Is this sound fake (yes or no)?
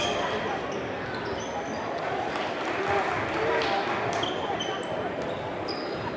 no